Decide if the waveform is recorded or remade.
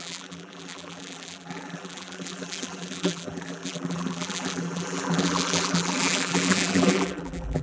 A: remade